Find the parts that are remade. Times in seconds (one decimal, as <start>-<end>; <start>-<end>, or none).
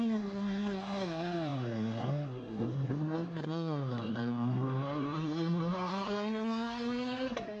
0.0-7.6